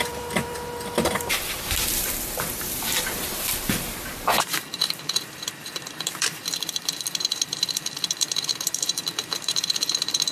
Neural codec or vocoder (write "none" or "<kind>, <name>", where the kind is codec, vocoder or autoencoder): vocoder, BigVGAN v2